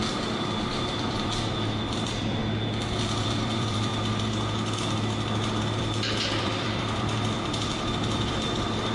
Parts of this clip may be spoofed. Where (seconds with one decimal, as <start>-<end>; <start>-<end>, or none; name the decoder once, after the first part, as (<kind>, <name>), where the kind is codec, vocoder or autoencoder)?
0.0-2.4 (vocoder, BigVGAN v2); 3.2-3.9; 5.8-8.9